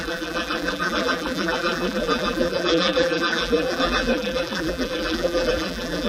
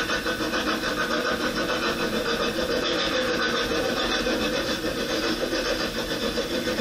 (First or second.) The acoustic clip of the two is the second